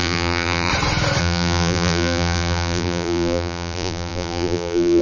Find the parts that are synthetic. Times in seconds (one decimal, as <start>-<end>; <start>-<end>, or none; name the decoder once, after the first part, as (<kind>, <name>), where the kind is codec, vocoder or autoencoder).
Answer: 0.0-0.7 (vocoder, BigVGAN v2); 1.2-5.0